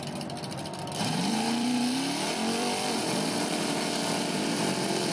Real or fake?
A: fake